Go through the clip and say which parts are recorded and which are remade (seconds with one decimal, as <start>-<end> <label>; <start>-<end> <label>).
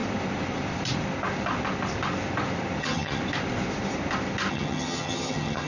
0.0-2.8 recorded; 2.8-3.2 remade; 3.2-4.5 recorded; 4.5-5.7 remade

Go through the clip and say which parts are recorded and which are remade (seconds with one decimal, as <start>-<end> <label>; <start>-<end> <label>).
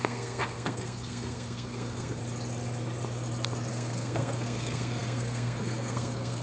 0.0-2.2 remade; 2.2-3.7 recorded; 3.7-6.4 remade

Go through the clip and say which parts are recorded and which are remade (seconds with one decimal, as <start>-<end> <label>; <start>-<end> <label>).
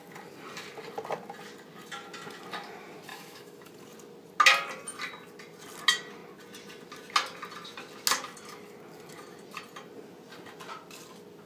0.0-3.1 recorded; 3.1-3.7 remade; 3.7-11.5 recorded